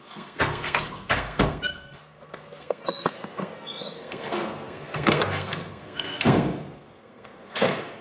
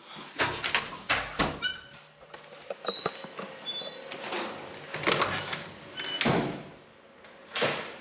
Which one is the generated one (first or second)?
first